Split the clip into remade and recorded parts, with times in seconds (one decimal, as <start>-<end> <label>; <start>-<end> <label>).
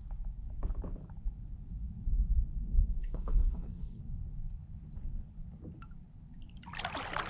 0.0-3.0 recorded; 3.0-4.0 remade; 4.0-7.3 recorded